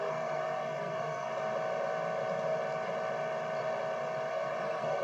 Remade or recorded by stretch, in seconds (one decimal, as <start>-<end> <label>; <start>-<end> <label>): 0.0-1.3 remade; 1.3-4.3 recorded; 4.3-5.0 remade

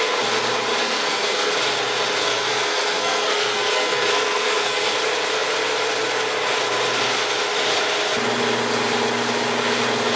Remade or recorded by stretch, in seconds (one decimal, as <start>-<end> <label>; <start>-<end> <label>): 0.0-0.8 recorded; 0.8-1.5 remade; 1.5-2.2 recorded; 2.2-4.9 remade; 4.9-10.2 recorded

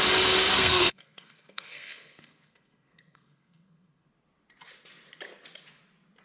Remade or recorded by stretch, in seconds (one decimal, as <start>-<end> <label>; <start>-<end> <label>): 0.0-0.4 recorded; 0.4-4.1 remade; 4.1-6.2 recorded